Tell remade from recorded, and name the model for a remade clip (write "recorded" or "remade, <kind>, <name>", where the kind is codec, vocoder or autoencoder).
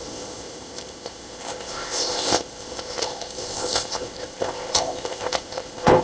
remade, codec, ZipCodec